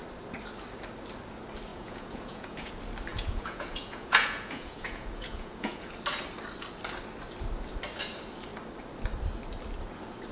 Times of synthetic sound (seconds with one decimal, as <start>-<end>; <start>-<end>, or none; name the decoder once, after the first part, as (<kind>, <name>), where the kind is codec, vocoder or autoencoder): 1.7-2.7 (vocoder, Vocos); 3.1-5.9

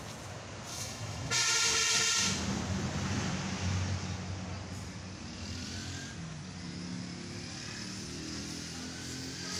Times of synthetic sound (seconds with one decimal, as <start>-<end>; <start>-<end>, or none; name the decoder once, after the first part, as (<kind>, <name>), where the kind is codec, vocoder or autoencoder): 0.7-1.3 (autoencoder, DAC-VAE)

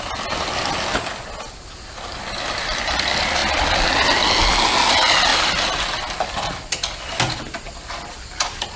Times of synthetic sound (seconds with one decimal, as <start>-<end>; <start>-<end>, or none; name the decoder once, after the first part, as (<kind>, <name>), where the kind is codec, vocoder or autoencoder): none

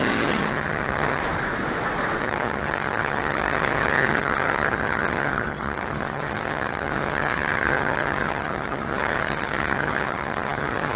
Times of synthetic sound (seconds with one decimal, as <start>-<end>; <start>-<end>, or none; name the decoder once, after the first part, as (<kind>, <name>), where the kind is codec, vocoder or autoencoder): 0.0-1.2 (vocoder, HiFi-GAN); 2.2-11.0

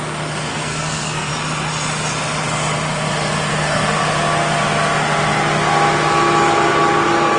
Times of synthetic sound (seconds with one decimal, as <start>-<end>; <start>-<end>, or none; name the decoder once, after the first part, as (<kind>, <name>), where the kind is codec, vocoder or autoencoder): 0.5-1.3 (codec, SNAC); 3.5-4.0

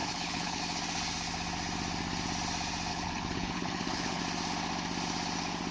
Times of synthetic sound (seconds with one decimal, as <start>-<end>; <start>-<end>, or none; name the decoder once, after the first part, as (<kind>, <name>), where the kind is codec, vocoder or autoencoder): 0.0-0.6 (codec, HILCodec); 2.9-4.2

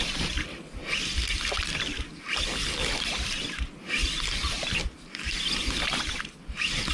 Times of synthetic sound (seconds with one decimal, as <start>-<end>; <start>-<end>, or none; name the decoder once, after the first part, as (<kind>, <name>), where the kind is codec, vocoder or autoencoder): 0.0-0.8 (vocoder, BigVGAN v2); 3.0-4.0; 6.0-6.9

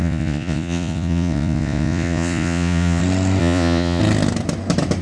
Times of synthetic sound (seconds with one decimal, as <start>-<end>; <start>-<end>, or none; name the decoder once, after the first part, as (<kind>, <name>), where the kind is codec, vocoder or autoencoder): 0.0-3.0 (vocoder, Vocos); 3.4-4.0